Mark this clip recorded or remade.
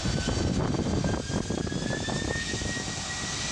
recorded